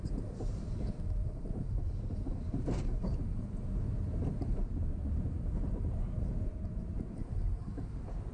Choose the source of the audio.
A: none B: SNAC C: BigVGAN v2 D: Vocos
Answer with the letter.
C